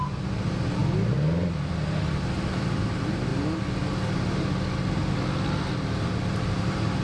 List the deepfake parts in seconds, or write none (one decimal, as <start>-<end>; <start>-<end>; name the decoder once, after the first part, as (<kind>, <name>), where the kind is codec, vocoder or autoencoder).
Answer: 0.0-0.8 (vocoder, BigVGAN v2); 2.1-3.3; 6.0-7.0